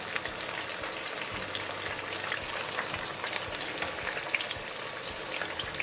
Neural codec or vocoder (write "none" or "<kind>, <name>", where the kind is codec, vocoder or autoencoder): none